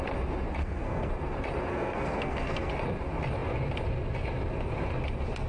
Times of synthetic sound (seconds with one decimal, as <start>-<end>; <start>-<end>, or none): 0.6-1.1; 1.7-2.7